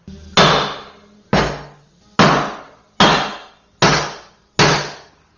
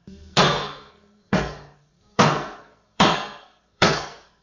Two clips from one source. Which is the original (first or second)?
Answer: first